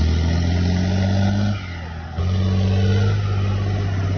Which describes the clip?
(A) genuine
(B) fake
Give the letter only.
A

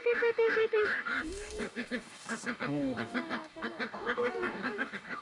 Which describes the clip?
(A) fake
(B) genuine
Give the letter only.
A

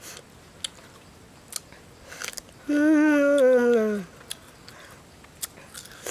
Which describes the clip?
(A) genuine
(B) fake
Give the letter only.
A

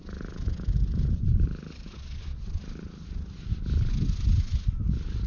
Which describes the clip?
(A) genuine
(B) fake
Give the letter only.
A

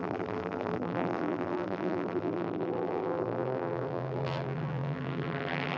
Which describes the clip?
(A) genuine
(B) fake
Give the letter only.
B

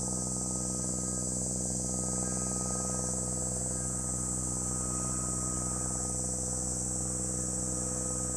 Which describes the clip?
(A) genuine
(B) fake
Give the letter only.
A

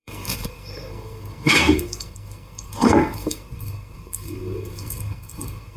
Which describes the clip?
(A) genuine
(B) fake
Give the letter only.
B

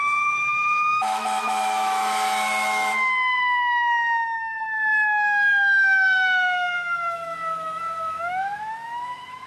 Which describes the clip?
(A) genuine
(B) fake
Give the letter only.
B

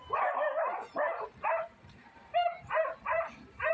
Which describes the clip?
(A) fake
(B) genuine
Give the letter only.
A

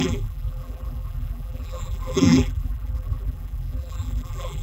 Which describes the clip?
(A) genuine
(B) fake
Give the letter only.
B